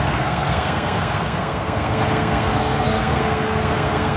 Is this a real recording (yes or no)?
no